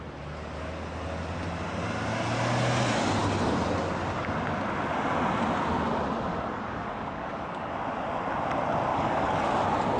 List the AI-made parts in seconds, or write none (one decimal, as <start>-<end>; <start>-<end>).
6.3-7.7; 8.9-9.6

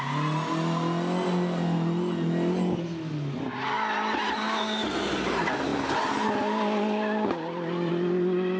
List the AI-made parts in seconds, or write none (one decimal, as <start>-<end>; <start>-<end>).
none